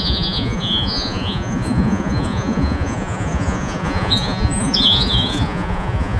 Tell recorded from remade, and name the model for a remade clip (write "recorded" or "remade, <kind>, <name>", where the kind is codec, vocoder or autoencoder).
remade, vocoder, Vocos